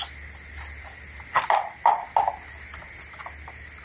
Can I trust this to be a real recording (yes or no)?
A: yes